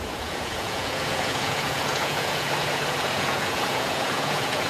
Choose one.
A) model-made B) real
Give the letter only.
A